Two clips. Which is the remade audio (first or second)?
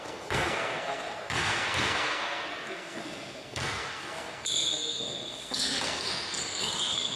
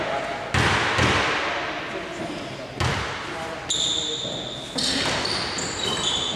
first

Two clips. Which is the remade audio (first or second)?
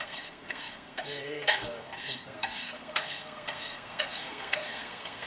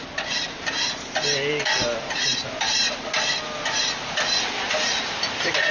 first